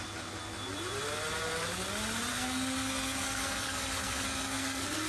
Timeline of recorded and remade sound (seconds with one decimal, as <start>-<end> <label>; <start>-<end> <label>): 0.0-2.3 recorded; 2.3-5.1 remade